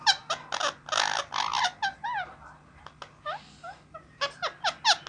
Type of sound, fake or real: real